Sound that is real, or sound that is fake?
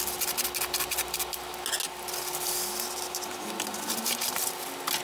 real